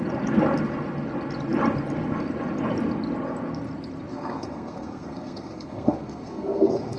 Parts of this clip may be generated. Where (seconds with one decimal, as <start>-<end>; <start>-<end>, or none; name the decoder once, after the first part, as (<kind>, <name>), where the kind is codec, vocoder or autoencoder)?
4.1-7.0 (codec, SNAC)